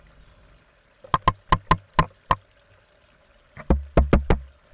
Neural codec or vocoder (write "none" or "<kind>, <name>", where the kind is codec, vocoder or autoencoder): none